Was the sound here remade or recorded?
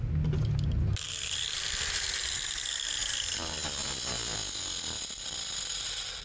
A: recorded